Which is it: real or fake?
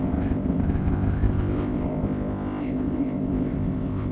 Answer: fake